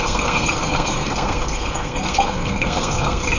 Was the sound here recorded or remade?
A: remade